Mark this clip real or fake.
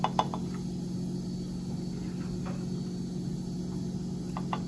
real